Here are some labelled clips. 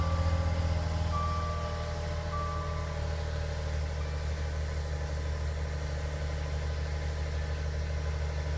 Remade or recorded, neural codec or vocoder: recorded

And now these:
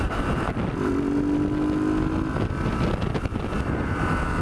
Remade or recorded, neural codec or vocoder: recorded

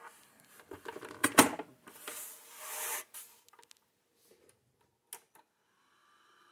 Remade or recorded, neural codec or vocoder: recorded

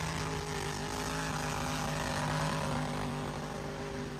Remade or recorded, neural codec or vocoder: recorded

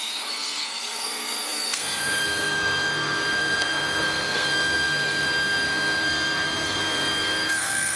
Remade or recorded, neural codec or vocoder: remade, codec, SNAC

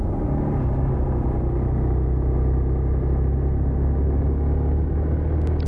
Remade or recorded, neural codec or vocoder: recorded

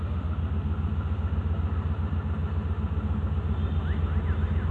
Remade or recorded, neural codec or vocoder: recorded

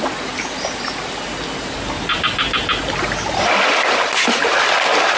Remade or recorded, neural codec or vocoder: recorded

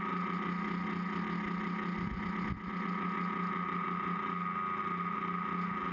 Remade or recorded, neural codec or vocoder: recorded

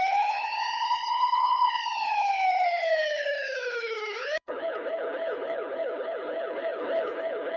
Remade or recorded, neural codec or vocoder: remade, codec, HILCodec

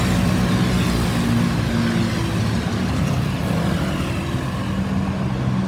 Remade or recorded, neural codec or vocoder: recorded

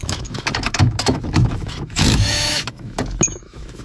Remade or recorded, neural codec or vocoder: remade, autoencoder, DAC-VAE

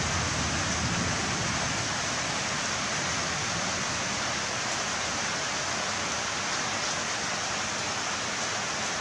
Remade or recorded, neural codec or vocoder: recorded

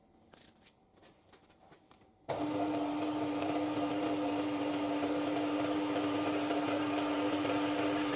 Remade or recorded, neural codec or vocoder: remade, vocoder, BigVGAN v2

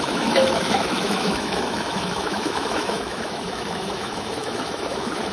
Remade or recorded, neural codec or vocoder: remade, autoencoder, DAC-VAE